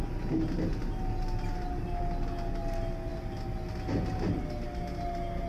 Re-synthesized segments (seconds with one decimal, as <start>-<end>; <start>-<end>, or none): none